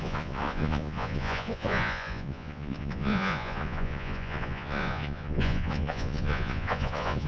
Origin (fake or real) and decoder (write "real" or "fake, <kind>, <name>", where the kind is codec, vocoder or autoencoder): fake, vocoder, Vocos